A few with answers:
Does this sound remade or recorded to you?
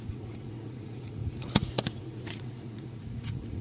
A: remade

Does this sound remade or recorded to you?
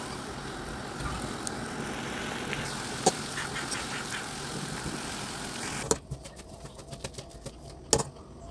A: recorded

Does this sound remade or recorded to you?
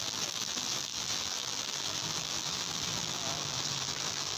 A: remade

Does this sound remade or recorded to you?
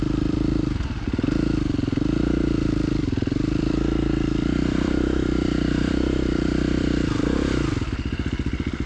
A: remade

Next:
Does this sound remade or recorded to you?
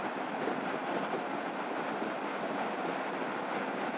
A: recorded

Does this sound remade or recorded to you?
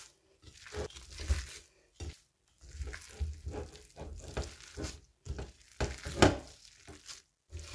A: recorded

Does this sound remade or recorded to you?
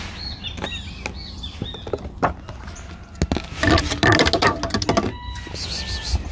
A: recorded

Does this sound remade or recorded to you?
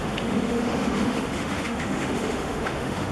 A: remade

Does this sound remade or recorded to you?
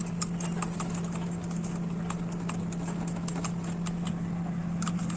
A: recorded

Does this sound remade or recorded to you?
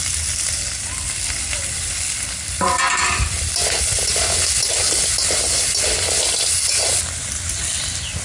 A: recorded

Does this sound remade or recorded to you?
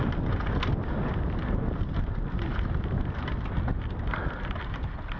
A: recorded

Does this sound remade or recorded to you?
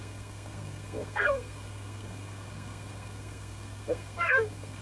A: remade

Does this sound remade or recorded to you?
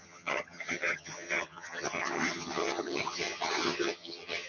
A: remade